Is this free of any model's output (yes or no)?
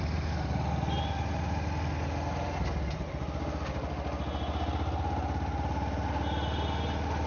yes